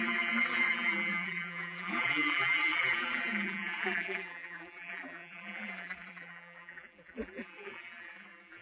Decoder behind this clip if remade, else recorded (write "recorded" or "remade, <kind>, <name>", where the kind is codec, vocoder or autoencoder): remade, vocoder, BigVGAN v2